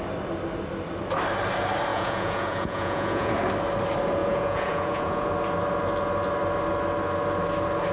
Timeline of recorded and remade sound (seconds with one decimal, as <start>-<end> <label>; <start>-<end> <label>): 0.0-1.9 recorded; 1.9-3.3 remade; 3.3-4.2 recorded; 4.2-5.3 remade; 5.3-7.9 recorded

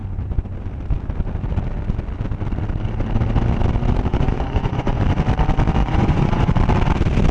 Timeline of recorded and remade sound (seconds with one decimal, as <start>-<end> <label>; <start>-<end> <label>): 0.0-4.1 recorded; 4.1-5.0 remade; 5.0-5.8 recorded; 5.8-6.5 remade; 6.5-7.3 recorded

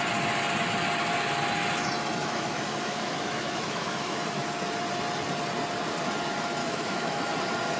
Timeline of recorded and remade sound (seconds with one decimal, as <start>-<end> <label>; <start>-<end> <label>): 0.0-2.2 recorded; 2.2-4.5 remade; 4.5-6.6 recorded; 6.6-7.3 remade; 7.3-7.8 recorded

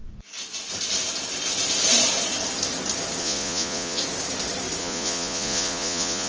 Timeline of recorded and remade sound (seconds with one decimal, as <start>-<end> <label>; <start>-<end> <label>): 0.0-3.2 recorded; 3.2-4.0 remade; 4.0-4.8 recorded; 4.8-6.3 remade